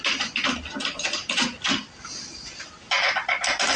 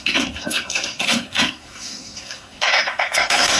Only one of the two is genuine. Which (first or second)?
first